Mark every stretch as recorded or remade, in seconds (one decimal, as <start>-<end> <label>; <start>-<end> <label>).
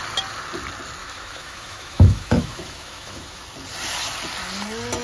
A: 0.0-1.0 recorded; 1.0-3.4 remade; 3.4-5.0 recorded